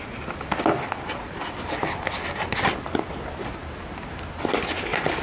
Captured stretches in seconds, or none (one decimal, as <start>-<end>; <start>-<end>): 0.0-5.2